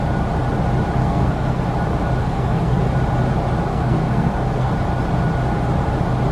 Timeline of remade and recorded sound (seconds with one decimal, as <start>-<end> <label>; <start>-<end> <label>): 0.0-1.0 recorded; 1.0-1.6 remade; 1.6-2.2 recorded; 2.2-2.8 remade; 2.8-3.7 recorded; 3.7-4.7 remade; 4.7-6.3 recorded